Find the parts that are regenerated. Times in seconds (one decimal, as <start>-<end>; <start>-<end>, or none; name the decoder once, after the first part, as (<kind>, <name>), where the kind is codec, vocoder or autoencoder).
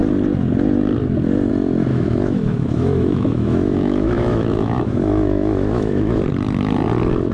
1.9-6.2 (autoencoder, DAC-VAE)